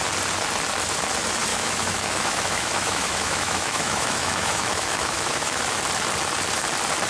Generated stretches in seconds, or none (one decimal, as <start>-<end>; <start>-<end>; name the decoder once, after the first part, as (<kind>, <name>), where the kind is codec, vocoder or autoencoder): 1.5-5.8 (autoencoder, DAC-VAE)